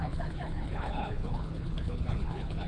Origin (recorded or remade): remade